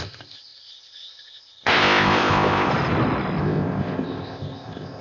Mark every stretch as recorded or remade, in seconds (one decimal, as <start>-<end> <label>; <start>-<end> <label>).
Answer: 0.0-2.7 remade; 2.7-3.4 recorded; 3.4-5.0 remade